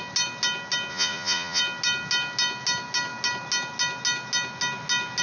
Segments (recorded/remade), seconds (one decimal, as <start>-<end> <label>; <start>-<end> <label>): 0.0-0.9 recorded; 0.9-1.6 remade; 1.6-5.2 recorded